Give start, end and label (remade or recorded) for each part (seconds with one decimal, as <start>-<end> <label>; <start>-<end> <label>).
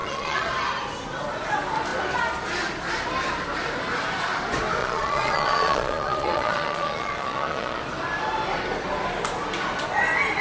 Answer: 0.0-0.5 remade; 0.5-4.8 recorded; 4.8-7.8 remade; 7.8-10.4 recorded